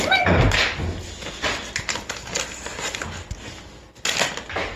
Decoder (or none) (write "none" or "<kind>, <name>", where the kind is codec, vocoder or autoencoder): none